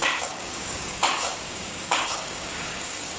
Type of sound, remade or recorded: remade